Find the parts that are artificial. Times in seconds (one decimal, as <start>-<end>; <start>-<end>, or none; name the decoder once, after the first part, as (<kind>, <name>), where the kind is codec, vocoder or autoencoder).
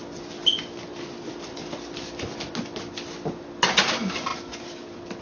none